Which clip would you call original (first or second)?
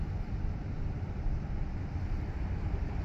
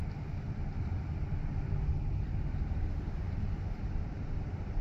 first